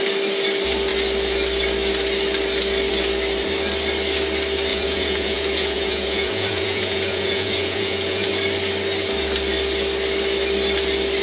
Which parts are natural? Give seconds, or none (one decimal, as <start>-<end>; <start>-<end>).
0.0-4.7; 8.3-11.2